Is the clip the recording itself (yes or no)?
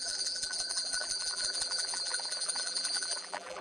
no